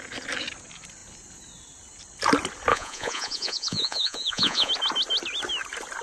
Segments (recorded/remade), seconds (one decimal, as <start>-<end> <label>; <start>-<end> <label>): 0.0-2.7 recorded; 2.7-4.7 remade; 4.7-6.0 recorded